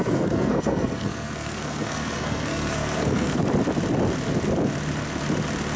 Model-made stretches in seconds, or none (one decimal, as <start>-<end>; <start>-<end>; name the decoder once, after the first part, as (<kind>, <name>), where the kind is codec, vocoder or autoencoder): 0.0-3.4 (codec, SNAC)